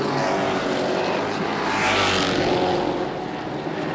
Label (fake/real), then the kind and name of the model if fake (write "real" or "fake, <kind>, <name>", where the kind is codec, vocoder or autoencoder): real